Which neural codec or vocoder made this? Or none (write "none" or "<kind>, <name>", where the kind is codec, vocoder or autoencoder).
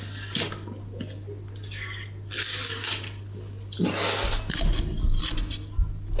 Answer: none